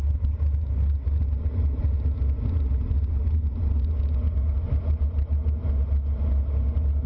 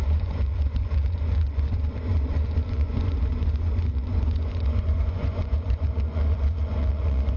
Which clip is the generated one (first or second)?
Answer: second